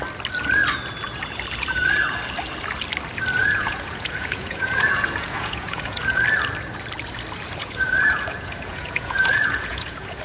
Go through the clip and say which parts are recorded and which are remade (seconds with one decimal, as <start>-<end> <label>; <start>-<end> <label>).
0.0-3.4 recorded; 3.4-6.2 remade; 6.2-7.6 recorded; 7.6-10.2 remade